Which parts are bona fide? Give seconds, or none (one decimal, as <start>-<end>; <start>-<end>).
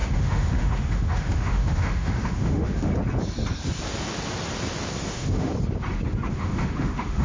2.9-5.1; 5.5-6.3